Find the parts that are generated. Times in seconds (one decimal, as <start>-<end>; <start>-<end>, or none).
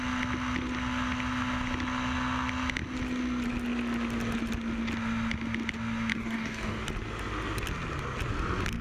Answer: 6.1-6.8